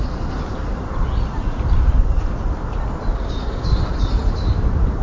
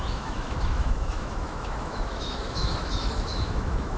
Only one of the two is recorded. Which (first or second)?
first